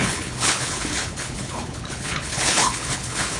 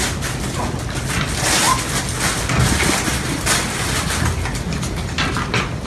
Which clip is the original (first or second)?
second